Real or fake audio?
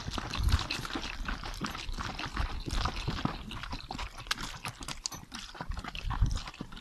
real